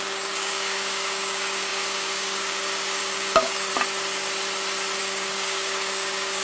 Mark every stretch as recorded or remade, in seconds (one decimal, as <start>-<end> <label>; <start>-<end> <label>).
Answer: 0.0-3.7 remade; 3.7-5.0 recorded; 5.0-6.4 remade